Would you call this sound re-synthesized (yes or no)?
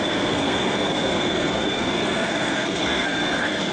yes